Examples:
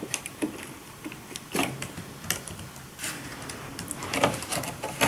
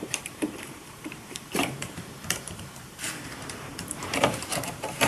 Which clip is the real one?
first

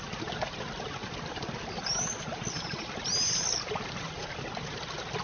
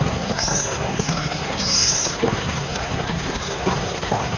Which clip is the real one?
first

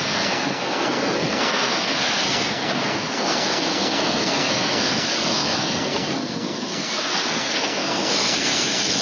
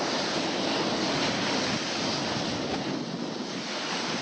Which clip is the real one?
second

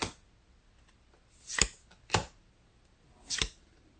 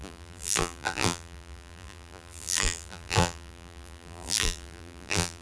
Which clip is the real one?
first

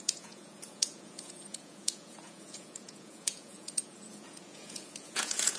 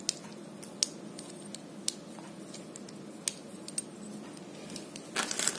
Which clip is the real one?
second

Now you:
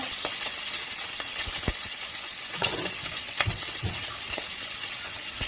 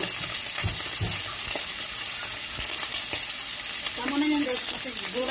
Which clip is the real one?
second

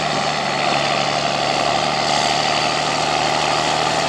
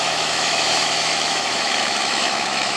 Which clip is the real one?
first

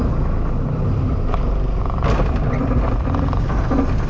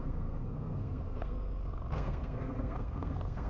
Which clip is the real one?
first